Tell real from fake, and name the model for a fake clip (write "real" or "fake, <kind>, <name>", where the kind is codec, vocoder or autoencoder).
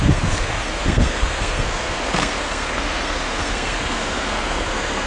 fake, codec, SNAC